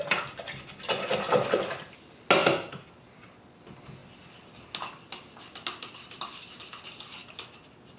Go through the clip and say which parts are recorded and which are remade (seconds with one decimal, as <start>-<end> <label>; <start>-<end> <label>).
0.0-8.0 recorded